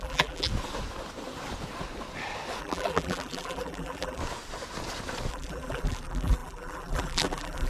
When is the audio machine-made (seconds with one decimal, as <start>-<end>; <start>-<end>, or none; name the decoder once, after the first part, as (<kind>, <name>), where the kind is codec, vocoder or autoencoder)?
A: 0.0-0.5 (vocoder, BigVGAN v2); 2.6-4.2; 5.3-7.7

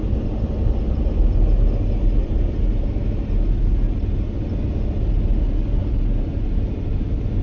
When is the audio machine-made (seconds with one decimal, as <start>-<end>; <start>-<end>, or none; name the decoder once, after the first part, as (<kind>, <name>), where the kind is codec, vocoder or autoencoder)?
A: none

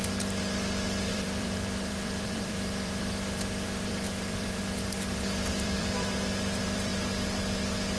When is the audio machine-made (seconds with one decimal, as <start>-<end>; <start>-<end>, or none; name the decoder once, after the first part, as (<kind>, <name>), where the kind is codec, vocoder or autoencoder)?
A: 1.1-4.6 (vocoder, BigVGAN v2); 5.5-6.9

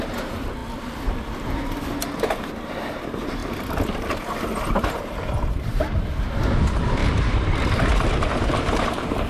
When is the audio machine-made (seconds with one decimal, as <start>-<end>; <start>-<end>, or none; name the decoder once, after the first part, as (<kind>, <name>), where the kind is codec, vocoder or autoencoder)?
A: 7.0-9.3 (vocoder, BigVGAN v2)

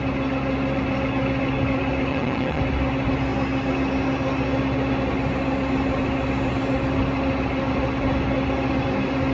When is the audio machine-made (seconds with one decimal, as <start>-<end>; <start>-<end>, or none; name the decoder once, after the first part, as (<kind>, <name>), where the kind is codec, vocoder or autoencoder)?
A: 2.1-2.6 (vocoder, HiFi-GAN)

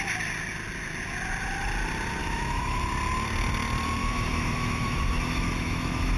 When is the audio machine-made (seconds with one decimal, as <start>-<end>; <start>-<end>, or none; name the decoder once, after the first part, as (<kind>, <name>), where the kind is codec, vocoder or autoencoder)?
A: 2.2-2.8 (autoencoder, DAC-VAE); 4.0-6.2